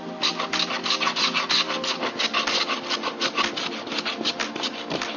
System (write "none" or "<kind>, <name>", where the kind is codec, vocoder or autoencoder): none